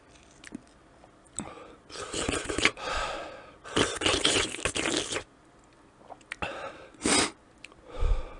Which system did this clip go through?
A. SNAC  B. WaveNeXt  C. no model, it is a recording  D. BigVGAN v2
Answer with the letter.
C